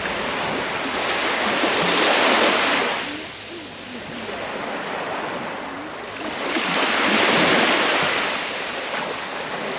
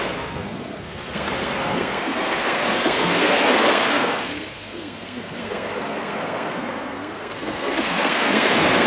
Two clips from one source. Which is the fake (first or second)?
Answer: second